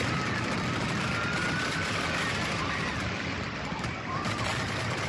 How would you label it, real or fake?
real